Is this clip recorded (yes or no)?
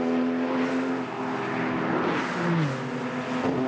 yes